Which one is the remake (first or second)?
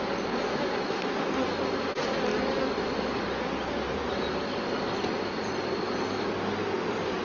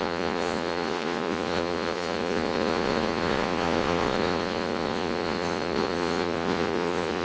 second